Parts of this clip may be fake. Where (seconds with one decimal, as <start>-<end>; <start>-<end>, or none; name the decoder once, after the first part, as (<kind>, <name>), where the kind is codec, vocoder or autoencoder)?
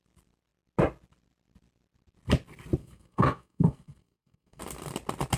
2.8-4.6 (codec, SNAC)